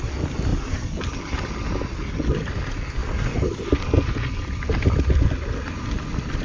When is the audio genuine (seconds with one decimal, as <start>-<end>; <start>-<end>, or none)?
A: 0.0-6.4